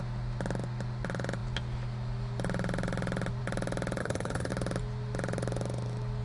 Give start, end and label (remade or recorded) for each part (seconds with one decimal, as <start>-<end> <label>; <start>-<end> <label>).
0.0-4.0 recorded; 4.0-4.5 remade; 4.5-6.2 recorded